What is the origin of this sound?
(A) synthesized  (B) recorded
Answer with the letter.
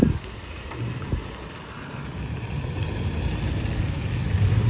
B